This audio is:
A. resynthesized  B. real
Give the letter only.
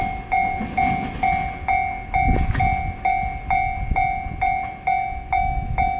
B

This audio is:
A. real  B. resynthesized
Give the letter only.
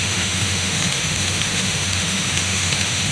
B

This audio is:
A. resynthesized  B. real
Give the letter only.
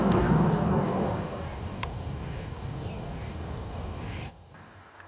A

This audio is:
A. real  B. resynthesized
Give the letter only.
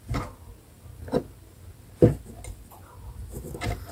A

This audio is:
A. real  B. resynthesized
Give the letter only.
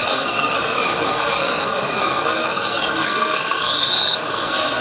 B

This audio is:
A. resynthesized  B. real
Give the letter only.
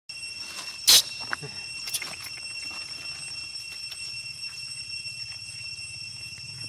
B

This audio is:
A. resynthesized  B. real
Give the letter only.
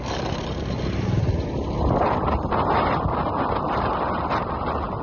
B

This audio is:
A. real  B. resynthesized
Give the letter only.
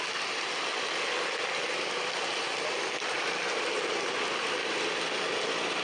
A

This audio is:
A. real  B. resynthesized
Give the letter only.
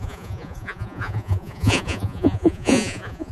B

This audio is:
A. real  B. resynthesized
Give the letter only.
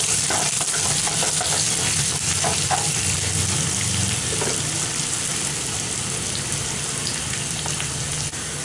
A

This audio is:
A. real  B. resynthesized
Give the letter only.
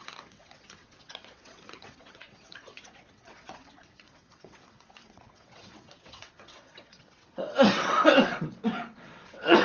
B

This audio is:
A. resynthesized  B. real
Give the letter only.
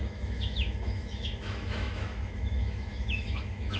A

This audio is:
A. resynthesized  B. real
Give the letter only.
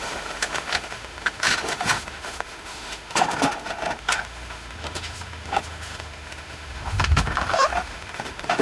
A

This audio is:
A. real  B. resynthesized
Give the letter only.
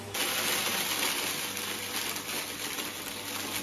A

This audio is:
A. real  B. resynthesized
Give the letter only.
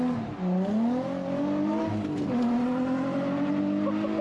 A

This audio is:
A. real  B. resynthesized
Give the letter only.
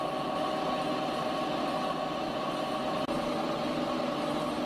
A